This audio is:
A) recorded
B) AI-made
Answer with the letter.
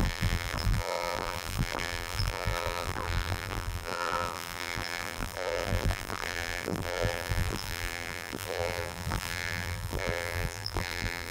B